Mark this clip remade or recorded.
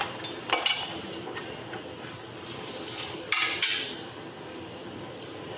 recorded